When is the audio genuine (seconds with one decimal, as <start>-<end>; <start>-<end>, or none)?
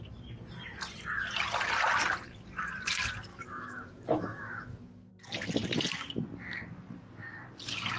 0.0-3.3; 5.1-8.0